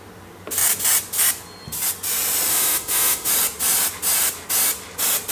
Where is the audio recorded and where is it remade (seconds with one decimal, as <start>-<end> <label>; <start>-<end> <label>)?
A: 0.0-2.5 recorded; 2.5-3.3 remade; 3.3-5.3 recorded